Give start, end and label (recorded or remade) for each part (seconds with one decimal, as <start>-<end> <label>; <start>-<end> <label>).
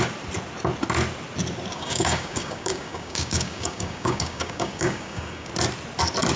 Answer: 0.0-1.7 recorded; 1.7-5.5 remade; 5.5-6.4 recorded